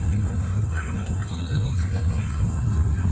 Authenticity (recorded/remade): remade